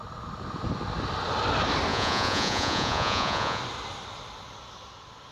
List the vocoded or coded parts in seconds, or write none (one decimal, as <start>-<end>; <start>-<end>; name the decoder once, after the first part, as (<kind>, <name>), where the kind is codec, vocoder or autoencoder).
1.9-3.6 (vocoder, Vocos)